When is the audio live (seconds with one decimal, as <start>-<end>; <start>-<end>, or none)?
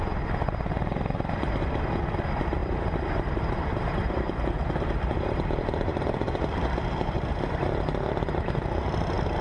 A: 0.0-2.6; 7.6-9.4